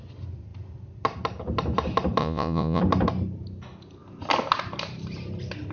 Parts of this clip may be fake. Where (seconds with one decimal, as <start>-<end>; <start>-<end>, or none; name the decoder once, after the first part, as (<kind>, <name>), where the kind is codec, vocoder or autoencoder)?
2.2-2.8 (vocoder, Vocos)